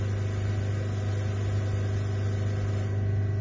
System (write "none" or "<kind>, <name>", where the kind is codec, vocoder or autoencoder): none